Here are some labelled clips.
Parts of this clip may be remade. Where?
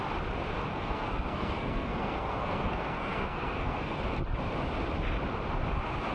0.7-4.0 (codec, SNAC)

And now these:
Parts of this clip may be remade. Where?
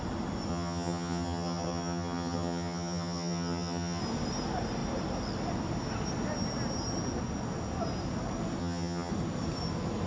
0.5-4.0 (vocoder, HiFi-GAN); 8.6-9.1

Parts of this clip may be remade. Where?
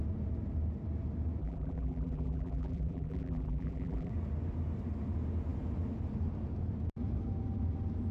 1.4-4.1 (vocoder, BigVGAN v2)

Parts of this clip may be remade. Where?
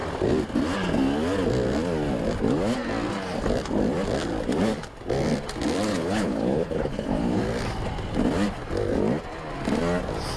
5.9-7.4 (codec, HILCodec)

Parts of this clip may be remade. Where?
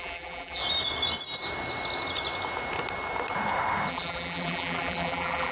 0.0-0.6 (vocoder, BigVGAN v2); 3.9-5.5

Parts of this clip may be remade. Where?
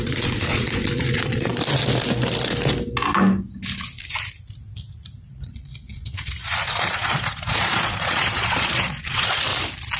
0.0-1.5 (vocoder, Vocos); 5.3-9.5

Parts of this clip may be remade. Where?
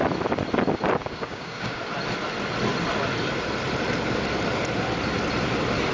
1.0-1.8 (codec, DAC)